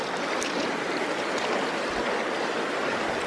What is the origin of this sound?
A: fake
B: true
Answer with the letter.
B